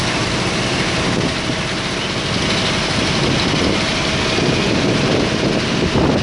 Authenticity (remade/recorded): recorded